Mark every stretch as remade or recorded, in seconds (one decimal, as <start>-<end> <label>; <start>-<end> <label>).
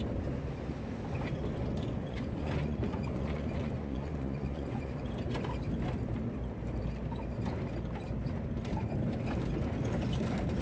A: 0.0-1.6 recorded; 1.6-5.0 remade; 5.0-10.6 recorded